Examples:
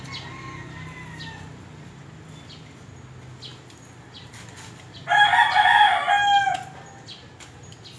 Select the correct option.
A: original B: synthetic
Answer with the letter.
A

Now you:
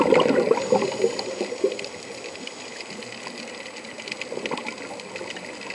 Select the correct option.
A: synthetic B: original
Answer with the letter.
B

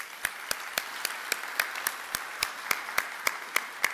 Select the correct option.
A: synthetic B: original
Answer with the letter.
A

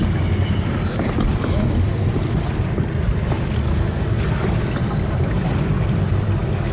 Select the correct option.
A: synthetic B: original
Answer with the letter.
B